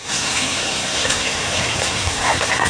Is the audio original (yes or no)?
no